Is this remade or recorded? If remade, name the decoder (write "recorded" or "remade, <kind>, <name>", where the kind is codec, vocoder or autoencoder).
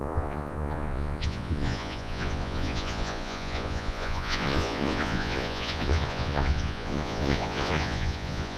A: remade, vocoder, Vocos